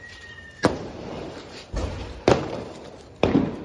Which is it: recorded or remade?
remade